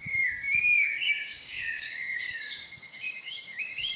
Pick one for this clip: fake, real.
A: fake